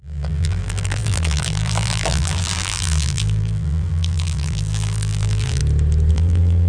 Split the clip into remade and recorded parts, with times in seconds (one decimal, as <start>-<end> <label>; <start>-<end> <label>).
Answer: 0.0-5.6 remade; 5.6-6.1 recorded; 6.1-6.7 remade